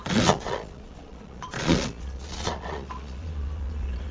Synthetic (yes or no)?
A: yes